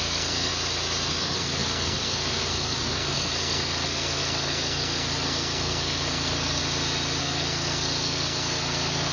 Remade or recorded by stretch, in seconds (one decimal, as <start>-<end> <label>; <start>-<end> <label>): 0.0-0.5 remade; 0.5-1.1 recorded; 1.1-6.6 remade; 6.6-7.2 recorded; 7.2-9.1 remade